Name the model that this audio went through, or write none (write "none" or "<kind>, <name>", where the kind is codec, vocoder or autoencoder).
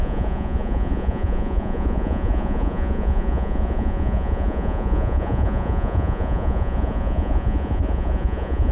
vocoder, Vocos